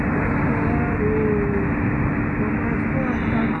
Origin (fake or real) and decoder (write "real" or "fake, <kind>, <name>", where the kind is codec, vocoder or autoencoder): real